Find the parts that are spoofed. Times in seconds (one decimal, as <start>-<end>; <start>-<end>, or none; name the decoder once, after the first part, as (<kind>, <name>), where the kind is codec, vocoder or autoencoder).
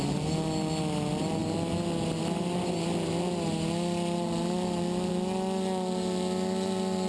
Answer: none